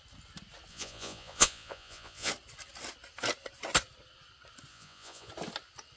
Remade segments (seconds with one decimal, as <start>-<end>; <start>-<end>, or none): 0.7-2.3; 4.7-5.3